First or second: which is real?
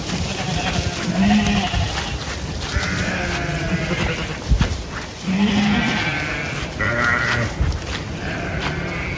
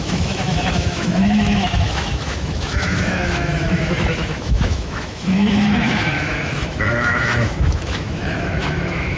first